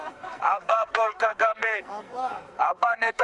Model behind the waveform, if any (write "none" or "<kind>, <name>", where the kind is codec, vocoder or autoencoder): codec, SNAC